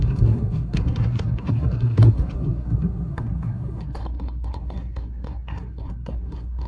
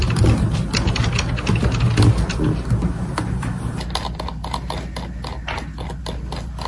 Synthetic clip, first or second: first